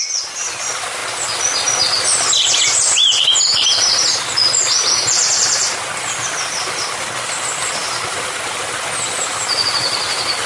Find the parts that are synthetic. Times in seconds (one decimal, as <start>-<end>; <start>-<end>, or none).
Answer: none